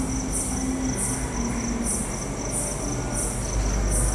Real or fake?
real